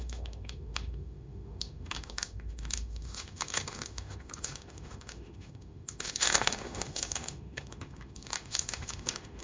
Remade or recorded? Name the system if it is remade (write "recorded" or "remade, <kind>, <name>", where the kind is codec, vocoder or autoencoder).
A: remade, autoencoder, DAC-VAE